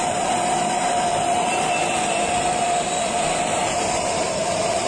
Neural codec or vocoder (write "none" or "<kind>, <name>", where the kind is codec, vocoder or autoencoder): vocoder, BigVGAN v2